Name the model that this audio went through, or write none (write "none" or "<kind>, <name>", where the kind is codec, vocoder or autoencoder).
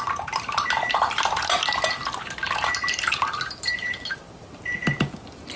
none